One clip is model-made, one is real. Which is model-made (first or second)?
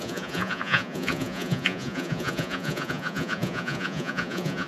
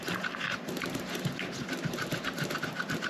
first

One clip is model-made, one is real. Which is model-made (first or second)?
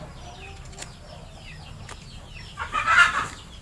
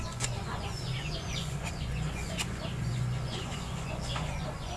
second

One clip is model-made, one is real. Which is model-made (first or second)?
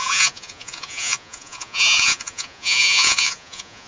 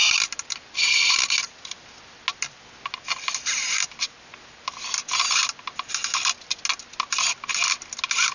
first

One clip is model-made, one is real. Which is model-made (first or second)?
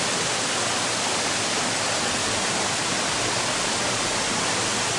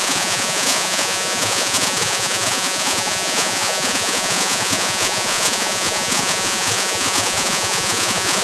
second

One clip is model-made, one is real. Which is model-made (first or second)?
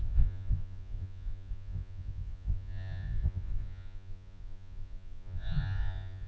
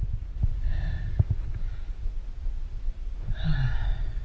first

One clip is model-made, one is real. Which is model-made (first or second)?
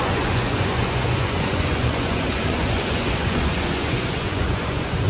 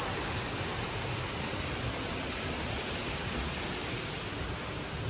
first